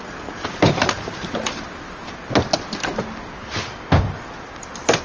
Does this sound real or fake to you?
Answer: real